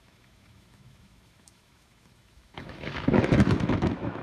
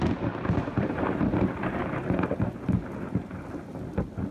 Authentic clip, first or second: second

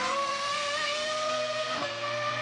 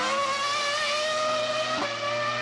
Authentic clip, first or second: second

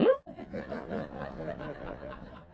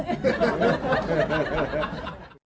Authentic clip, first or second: second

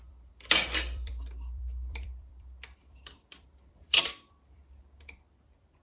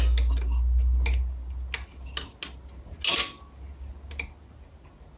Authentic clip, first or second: second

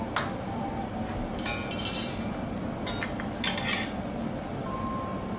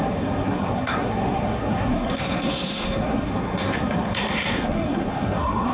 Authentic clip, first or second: first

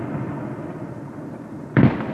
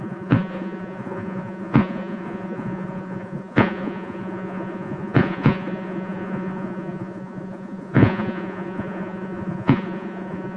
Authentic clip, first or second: first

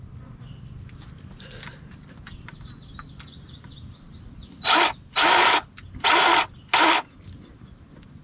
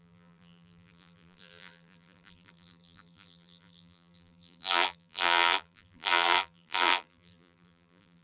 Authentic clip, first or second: first